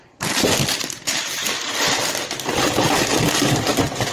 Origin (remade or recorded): remade